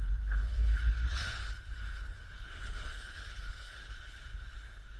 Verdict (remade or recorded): remade